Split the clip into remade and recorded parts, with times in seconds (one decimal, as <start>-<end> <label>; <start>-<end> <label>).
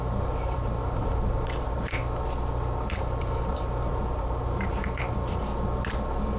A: 0.0-2.0 remade; 2.0-2.9 recorded; 2.9-5.5 remade; 5.5-6.4 recorded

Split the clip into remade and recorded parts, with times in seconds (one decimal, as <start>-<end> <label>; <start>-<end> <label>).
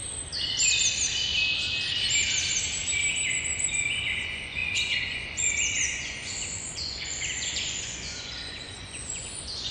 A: 0.0-3.3 recorded; 3.3-9.7 remade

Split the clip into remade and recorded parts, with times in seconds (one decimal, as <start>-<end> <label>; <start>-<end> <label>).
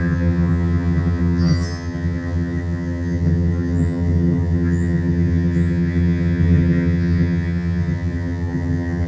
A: 0.0-9.1 remade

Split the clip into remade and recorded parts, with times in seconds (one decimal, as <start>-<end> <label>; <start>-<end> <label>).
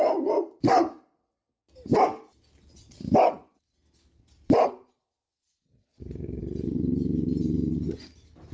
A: 0.0-8.5 recorded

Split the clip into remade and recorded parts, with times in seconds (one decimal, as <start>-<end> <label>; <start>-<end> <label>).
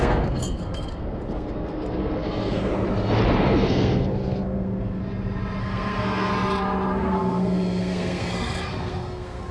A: 0.0-2.7 remade; 2.7-3.4 recorded; 3.4-5.0 remade; 5.0-5.6 recorded; 5.6-6.3 remade; 6.3-7.0 recorded; 7.0-9.5 remade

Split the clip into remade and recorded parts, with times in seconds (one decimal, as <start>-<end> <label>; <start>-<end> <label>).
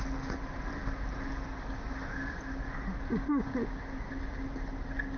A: 0.0-5.2 recorded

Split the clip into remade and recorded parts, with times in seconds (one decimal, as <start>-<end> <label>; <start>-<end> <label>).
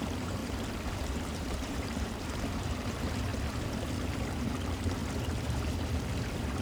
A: 0.0-0.4 remade; 0.4-1.2 recorded; 1.2-3.3 remade; 3.3-3.8 recorded; 3.8-5.0 remade; 5.0-6.6 recorded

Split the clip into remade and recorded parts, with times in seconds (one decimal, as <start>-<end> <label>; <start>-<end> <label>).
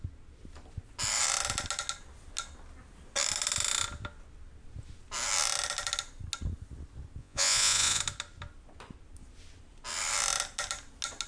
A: 0.0-7.2 recorded; 7.2-8.0 remade; 8.0-11.3 recorded